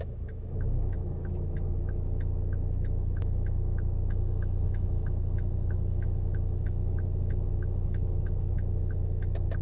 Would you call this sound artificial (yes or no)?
yes